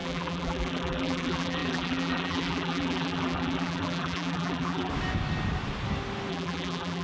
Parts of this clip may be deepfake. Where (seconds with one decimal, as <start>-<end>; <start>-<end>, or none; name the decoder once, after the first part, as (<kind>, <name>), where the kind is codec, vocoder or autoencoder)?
0.0-4.9 (vocoder, BigVGAN v2); 6.3-7.0